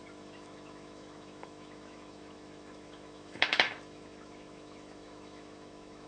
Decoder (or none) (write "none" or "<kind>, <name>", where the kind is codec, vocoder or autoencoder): autoencoder, DAC-VAE